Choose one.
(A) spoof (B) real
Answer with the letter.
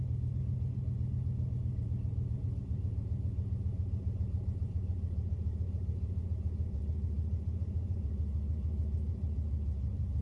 A